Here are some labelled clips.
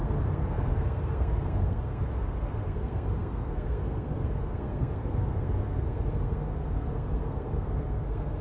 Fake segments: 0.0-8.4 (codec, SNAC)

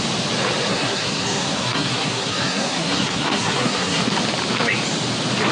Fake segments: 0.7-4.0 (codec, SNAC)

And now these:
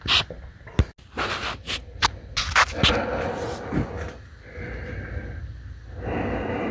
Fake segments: none

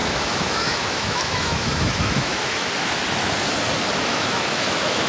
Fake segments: 0.0-2.7 (autoencoder, DAC-VAE); 4.1-5.1

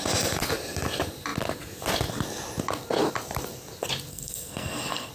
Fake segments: 4.1-5.1 (codec, SNAC)